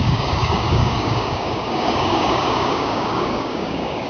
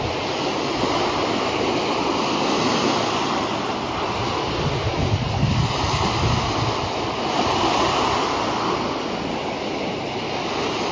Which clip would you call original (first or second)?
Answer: second